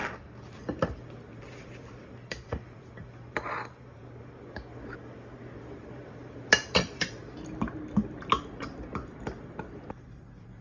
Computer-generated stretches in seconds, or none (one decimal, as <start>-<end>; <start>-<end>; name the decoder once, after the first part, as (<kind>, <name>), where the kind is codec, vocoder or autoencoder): 0.0-4.0 (vocoder, BigVGAN v2); 5.6-7.2; 8.4-10.6